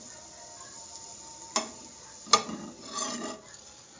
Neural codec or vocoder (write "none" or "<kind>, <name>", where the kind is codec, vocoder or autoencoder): none